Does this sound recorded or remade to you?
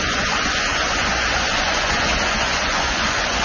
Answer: remade